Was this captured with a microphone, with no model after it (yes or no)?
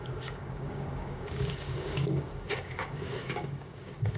no